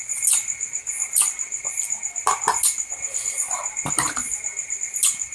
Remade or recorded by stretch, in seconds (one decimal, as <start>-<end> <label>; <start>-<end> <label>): 0.0-5.3 recorded